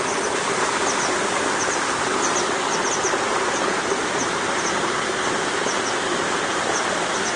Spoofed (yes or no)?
no